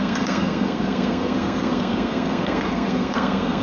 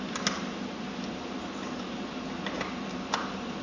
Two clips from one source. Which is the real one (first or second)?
second